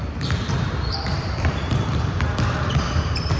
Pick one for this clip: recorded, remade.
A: remade